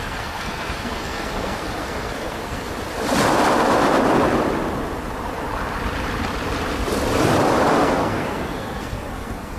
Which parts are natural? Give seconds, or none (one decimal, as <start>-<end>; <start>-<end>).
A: 2.7-7.8